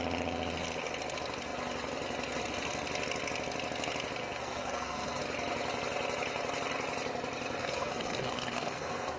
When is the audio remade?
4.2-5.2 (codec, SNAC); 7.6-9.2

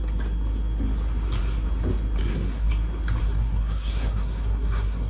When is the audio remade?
2.2-2.7 (codec, SNAC); 3.2-5.1

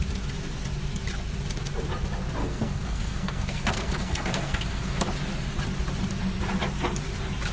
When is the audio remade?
2.4-5.0 (codec, SNAC)